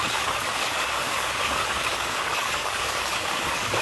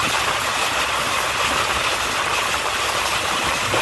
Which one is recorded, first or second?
second